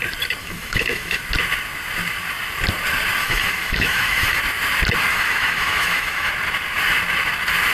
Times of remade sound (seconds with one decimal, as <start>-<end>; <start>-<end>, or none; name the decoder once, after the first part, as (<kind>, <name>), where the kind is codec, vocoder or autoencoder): 0.4-1.2 (autoencoder, DAC-VAE); 3.2-4.4; 5.1-6.3